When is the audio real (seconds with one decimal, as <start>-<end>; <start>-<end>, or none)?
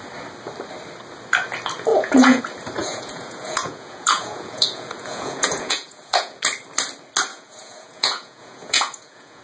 0.0-1.9; 2.4-2.8; 6.4-7.3